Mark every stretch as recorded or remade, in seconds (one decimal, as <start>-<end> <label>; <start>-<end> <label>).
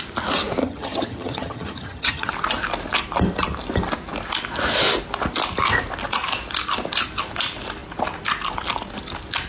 0.0-0.6 recorded; 0.6-2.3 remade; 2.3-9.5 recorded